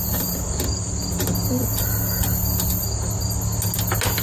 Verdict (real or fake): real